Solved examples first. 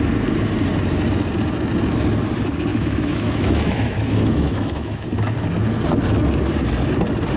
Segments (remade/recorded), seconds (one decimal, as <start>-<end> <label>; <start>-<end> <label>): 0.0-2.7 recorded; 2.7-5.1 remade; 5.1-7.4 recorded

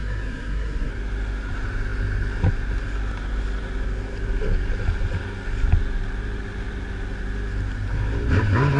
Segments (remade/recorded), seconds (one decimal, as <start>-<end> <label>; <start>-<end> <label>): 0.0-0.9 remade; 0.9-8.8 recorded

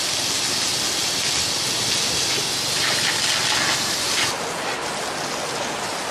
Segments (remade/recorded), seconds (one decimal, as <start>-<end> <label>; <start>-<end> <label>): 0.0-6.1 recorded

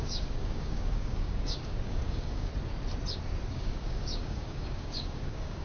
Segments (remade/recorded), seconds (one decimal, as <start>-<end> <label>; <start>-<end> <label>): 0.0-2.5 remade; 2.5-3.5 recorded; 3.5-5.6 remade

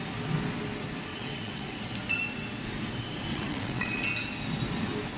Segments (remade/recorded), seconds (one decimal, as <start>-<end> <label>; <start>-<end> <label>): 0.0-1.1 recorded; 1.1-1.8 remade; 1.8-3.3 recorded; 3.3-4.1 remade; 4.1-5.2 recorded